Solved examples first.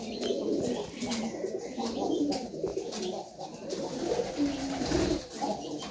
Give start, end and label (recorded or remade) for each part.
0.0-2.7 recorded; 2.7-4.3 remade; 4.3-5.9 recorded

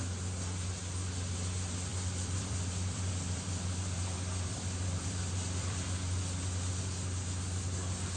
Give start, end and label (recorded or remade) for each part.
0.0-1.9 recorded; 1.9-6.8 remade; 6.8-8.2 recorded

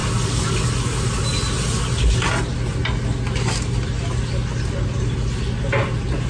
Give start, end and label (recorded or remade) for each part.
0.0-6.3 recorded